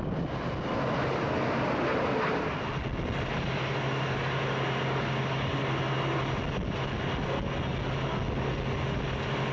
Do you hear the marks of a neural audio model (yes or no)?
no